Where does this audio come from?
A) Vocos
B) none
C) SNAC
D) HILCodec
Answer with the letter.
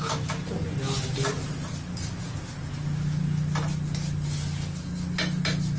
B